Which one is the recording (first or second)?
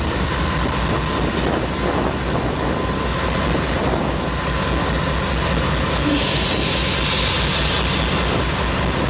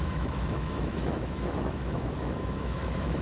first